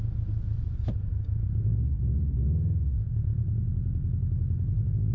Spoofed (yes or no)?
yes